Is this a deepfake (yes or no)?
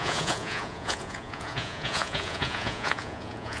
yes